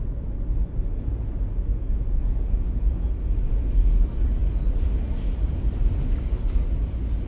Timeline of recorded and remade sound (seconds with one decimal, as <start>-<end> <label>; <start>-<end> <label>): 0.0-1.7 recorded; 1.7-3.1 remade; 3.1-7.3 recorded